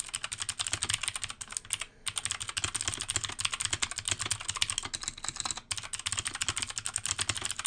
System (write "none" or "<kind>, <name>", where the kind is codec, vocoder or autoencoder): none